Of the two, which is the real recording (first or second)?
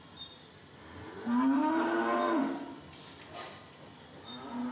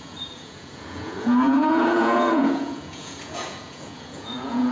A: first